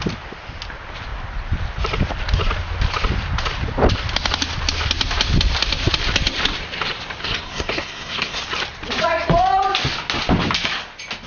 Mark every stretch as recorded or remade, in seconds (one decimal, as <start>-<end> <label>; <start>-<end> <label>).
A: 0.0-7.2 recorded; 7.2-8.4 remade; 8.4-11.3 recorded